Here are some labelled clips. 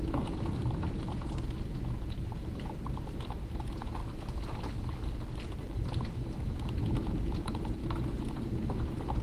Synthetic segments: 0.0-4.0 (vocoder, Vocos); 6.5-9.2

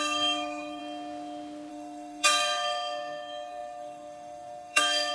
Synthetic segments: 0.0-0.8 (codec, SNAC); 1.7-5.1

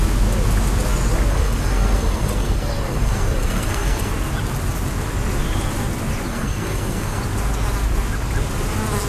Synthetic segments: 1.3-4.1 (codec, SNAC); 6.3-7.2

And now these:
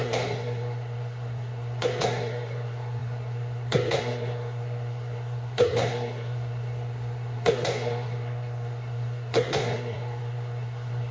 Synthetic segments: 0.0-11.1 (codec, SNAC)